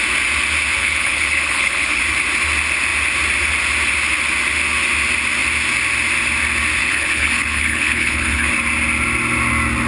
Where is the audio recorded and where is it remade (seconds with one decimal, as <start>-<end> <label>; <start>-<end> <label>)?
0.0-0.8 recorded; 0.8-2.0 remade; 2.0-6.8 recorded; 6.8-8.5 remade; 8.5-9.9 recorded